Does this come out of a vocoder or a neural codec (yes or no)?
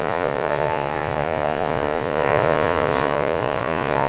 yes